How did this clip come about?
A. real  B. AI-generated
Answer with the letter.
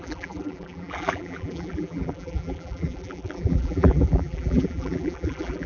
B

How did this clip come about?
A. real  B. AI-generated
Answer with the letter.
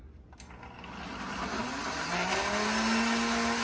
A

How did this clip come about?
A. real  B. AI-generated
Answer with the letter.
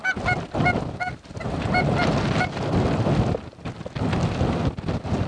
A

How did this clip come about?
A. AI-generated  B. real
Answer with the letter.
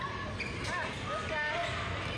B